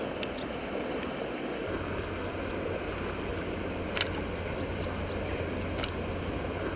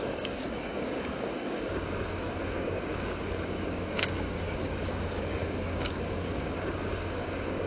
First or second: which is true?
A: first